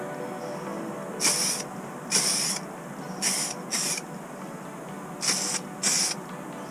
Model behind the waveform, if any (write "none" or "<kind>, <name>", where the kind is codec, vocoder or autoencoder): none